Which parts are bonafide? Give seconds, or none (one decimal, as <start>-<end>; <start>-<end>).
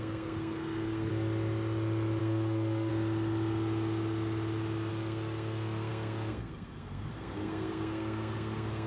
1.1-2.2; 2.9-4.9